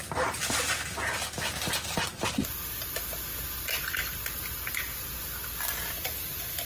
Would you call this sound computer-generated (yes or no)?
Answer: no